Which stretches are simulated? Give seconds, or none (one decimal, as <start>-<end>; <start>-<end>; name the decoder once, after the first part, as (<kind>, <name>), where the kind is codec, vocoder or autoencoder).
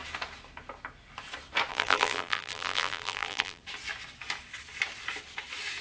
1.7-3.6 (vocoder, BigVGAN v2)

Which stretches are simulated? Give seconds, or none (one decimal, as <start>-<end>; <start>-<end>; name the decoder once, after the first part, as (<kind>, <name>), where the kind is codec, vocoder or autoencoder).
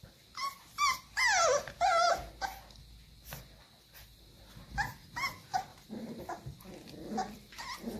5.7-6.2 (vocoder, BigVGAN v2)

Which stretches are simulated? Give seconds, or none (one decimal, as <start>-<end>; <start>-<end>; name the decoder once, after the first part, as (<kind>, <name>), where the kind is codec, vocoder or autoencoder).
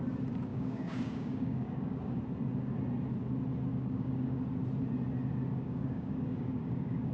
0.5-2.2 (codec, DAC); 3.7-4.4; 5.5-7.1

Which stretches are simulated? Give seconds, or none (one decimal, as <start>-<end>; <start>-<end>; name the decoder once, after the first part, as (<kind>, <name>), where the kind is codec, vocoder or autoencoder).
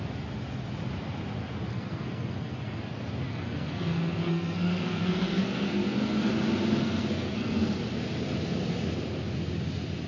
1.7-2.8 (codec, SNAC); 3.3-6.3; 6.7-7.8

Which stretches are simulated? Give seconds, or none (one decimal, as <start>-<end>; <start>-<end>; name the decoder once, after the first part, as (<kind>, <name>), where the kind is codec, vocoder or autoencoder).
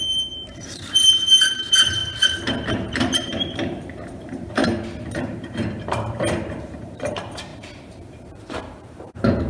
0.0-2.0 (vocoder, BigVGAN v2); 2.7-4.6; 5.1-9.5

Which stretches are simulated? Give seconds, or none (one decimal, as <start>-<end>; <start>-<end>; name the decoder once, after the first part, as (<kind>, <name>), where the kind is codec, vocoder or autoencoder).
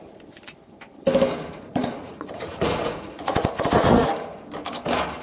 1.7-4.1 (vocoder, Vocos)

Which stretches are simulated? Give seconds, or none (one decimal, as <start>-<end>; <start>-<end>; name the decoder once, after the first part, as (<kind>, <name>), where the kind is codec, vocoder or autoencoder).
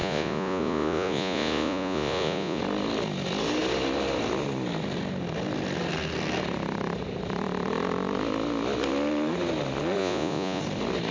0.0-2.6 (vocoder, Vocos); 10.0-10.6